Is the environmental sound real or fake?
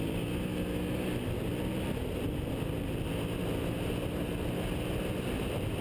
real